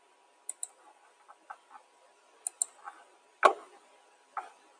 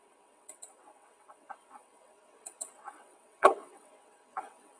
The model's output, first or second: second